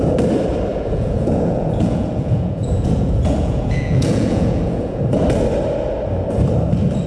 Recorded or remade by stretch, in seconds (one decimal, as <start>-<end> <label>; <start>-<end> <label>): 0.0-0.7 recorded; 0.7-5.0 remade; 5.0-7.1 recorded